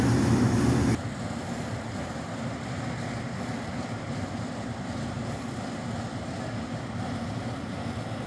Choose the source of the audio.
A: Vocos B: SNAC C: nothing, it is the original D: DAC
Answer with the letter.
C